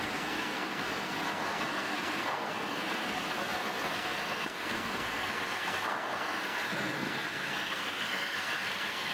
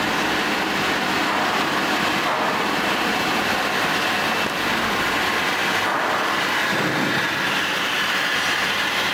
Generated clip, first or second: first